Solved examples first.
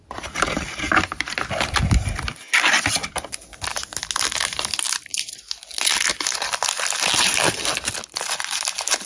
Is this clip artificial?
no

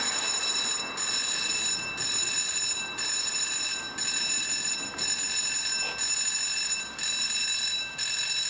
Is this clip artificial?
no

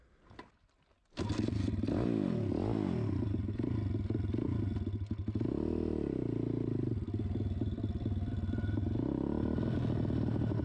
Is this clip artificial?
no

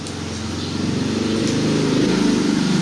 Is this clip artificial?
no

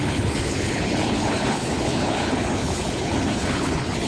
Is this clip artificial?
yes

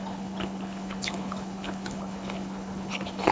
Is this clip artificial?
yes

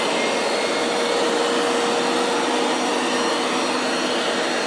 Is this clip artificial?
no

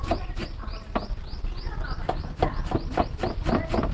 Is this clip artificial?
no